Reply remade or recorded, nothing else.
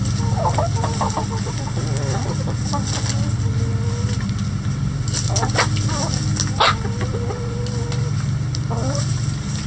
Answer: recorded